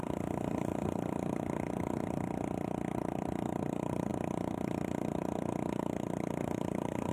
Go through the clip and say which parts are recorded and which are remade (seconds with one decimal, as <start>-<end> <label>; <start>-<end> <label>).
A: 0.0-7.1 recorded